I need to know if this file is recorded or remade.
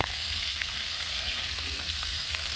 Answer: remade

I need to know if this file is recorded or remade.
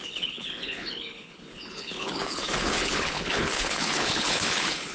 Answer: remade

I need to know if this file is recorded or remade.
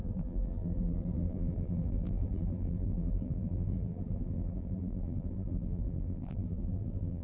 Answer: remade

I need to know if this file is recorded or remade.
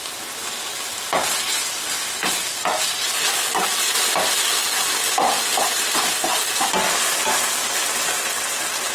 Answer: recorded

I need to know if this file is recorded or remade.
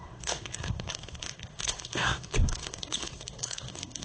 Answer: remade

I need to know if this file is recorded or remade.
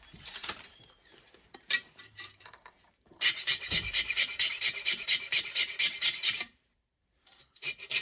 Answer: remade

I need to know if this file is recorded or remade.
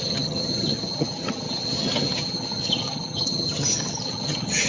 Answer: remade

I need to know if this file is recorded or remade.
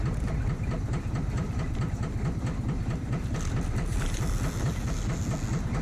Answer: recorded